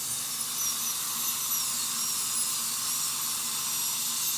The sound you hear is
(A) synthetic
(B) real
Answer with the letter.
B